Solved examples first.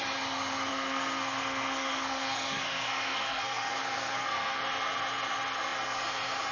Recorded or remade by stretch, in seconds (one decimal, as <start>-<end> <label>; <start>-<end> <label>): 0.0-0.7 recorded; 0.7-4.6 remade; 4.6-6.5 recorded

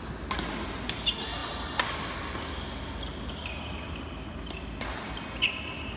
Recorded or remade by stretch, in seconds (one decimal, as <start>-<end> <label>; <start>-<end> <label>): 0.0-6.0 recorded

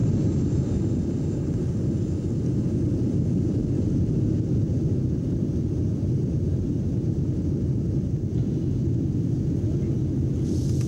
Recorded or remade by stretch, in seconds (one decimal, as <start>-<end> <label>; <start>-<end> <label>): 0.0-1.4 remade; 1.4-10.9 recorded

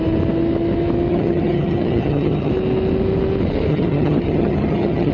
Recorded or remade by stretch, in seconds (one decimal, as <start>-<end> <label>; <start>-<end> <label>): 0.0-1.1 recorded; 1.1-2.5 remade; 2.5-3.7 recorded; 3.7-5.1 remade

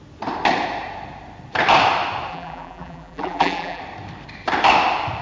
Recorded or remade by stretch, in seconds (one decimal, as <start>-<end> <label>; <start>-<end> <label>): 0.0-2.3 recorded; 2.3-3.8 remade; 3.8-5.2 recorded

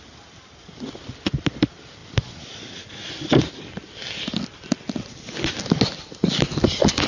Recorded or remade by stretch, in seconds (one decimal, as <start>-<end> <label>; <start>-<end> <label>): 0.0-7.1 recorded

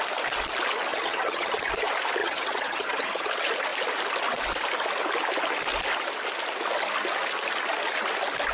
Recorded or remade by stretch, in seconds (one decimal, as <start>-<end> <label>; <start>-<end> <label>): 0.0-0.9 recorded; 0.9-1.7 remade; 1.7-2.2 recorded; 2.2-3.3 remade; 3.3-8.5 recorded